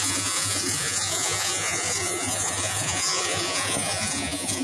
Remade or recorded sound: remade